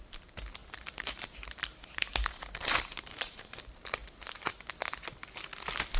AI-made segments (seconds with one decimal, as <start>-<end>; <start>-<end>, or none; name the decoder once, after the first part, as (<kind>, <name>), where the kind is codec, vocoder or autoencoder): 0.6-4.2 (vocoder, BigVGAN v2)